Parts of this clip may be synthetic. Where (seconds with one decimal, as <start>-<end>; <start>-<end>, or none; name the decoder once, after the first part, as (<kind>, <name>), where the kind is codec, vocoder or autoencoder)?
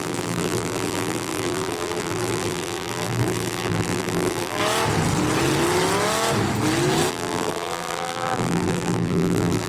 0.0-4.6 (vocoder, BigVGAN v2); 7.1-9.7